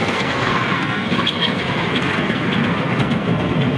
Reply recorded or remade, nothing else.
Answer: remade